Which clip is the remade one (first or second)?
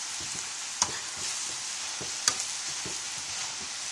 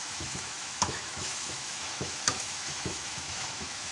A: second